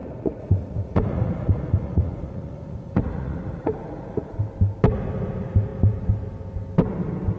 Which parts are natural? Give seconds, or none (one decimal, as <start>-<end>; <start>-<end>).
4.4-7.4